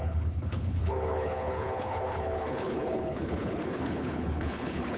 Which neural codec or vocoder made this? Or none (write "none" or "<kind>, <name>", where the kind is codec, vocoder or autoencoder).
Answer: codec, HILCodec